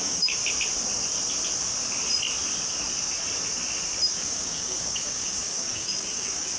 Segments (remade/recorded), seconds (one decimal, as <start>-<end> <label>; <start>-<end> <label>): 0.0-0.4 remade; 0.4-4.2 recorded; 4.2-6.6 remade